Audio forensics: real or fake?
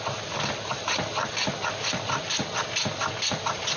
fake